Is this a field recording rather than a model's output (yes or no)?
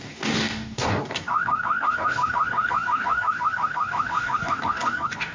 no